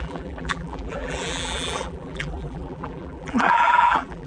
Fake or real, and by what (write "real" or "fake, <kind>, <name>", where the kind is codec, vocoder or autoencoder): fake, vocoder, BigVGAN v2